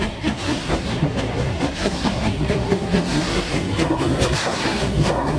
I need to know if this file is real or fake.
fake